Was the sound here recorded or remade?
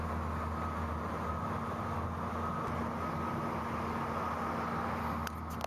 recorded